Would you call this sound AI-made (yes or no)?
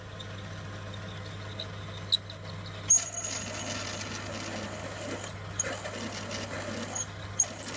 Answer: no